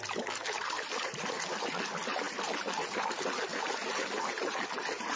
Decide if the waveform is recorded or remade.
recorded